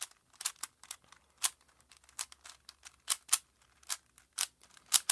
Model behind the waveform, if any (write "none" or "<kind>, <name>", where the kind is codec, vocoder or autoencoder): none